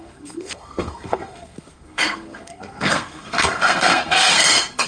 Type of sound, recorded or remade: remade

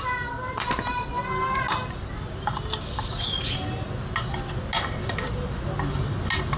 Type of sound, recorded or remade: recorded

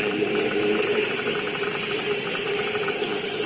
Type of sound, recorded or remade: recorded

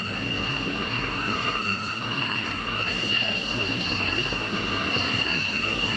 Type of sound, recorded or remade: remade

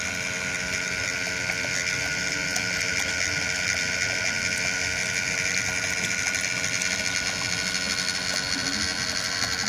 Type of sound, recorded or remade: recorded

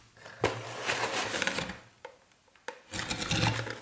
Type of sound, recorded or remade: recorded